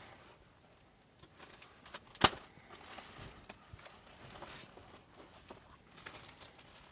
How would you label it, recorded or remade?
recorded